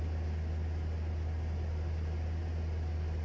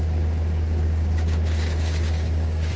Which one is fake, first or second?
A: second